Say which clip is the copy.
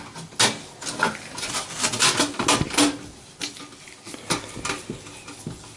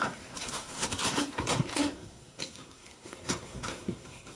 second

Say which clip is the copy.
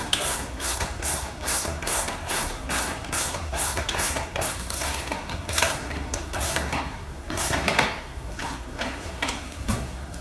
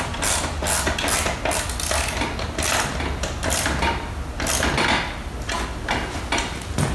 first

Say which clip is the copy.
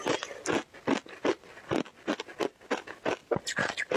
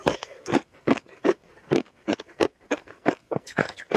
second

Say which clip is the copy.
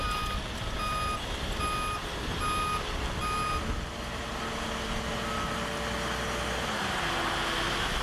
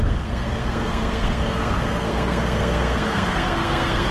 second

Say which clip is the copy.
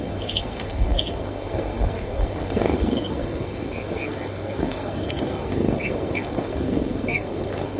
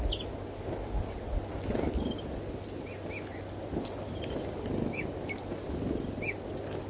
first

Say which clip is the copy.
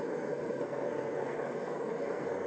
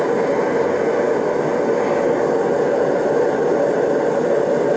first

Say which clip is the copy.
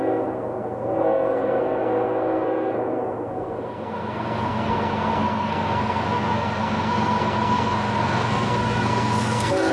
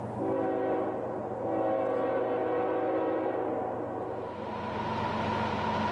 first